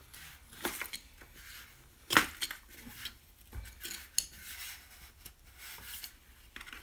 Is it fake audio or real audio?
real